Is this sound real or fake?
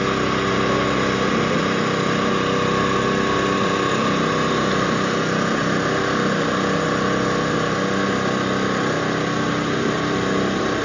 real